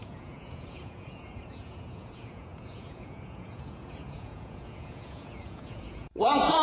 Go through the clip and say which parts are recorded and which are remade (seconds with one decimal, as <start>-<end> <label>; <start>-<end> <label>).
0.0-6.6 remade

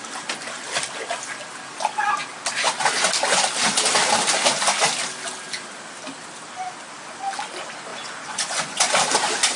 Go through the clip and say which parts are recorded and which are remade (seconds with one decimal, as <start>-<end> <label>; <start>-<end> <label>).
0.0-7.9 recorded; 7.9-8.9 remade; 8.9-9.6 recorded

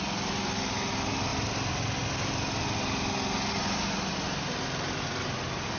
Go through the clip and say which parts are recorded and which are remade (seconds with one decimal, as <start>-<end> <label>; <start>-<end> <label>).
0.0-5.8 recorded

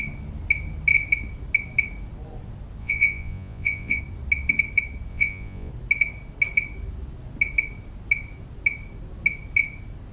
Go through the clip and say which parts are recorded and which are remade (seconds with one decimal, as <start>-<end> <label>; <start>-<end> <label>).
0.0-2.8 recorded; 2.8-4.0 remade; 4.0-5.1 recorded; 5.1-5.7 remade; 5.7-10.1 recorded

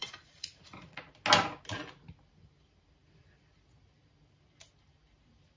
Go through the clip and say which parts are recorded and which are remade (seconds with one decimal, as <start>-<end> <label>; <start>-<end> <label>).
0.0-1.0 remade; 1.0-5.6 recorded

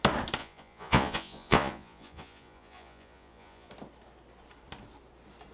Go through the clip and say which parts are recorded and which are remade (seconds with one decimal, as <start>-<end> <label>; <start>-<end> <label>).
0.0-0.4 recorded; 0.4-3.7 remade; 3.7-5.5 recorded